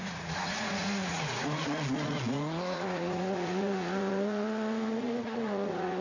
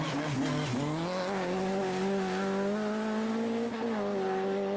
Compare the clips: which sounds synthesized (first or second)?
first